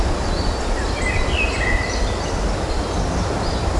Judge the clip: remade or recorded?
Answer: recorded